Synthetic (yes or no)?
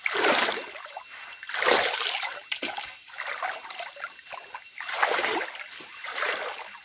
no